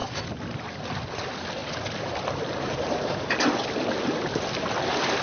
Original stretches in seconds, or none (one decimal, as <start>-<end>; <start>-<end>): 0.0-5.2